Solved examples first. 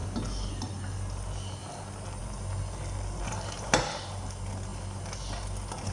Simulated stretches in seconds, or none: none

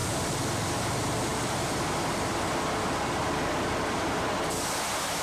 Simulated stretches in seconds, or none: 1.3-4.4 (vocoder, BigVGAN v2)

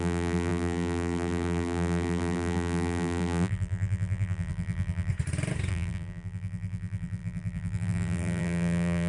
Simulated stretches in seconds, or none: 0.0-5.1 (vocoder, BigVGAN v2); 5.7-9.1

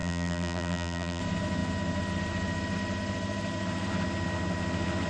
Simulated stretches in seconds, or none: 0.0-1.2 (vocoder, BigVGAN v2)

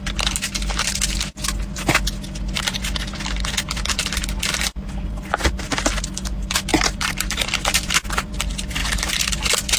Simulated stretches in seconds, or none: 6.7-8.3 (vocoder, BigVGAN v2); 8.8-9.3

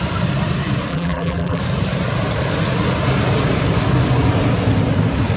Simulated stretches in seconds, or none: 0.9-1.6 (vocoder, BigVGAN v2)

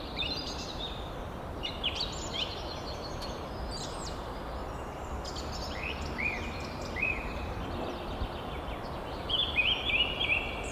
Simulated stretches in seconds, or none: 0.0-4.6 (vocoder, BigVGAN v2); 6.2-10.7